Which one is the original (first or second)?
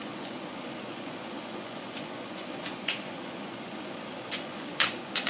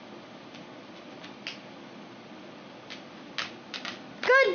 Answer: second